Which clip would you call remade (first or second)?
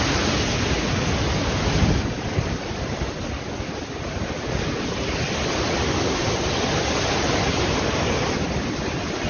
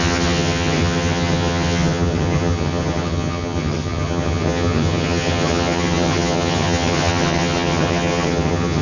second